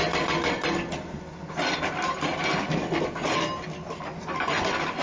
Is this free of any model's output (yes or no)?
yes